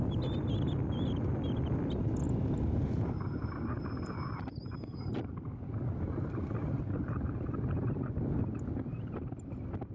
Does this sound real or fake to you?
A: real